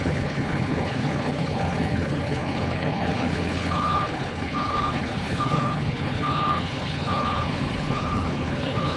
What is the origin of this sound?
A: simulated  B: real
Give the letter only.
A